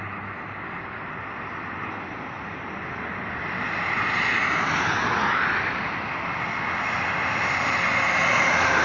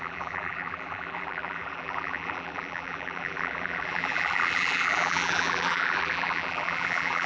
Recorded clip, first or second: first